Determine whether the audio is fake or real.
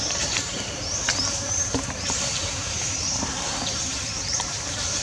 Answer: fake